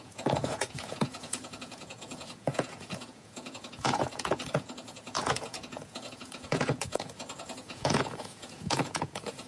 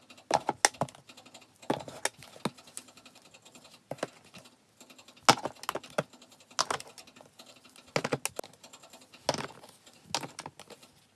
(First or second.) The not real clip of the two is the first